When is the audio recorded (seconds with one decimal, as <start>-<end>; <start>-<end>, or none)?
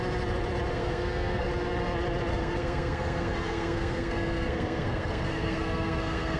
0.0-0.7; 1.5-2.3